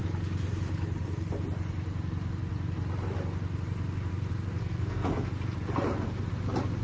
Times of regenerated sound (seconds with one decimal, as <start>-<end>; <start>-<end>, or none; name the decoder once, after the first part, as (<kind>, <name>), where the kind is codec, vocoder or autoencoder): 4.6-5.1 (codec, SNAC)